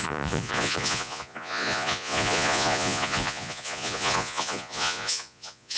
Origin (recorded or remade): remade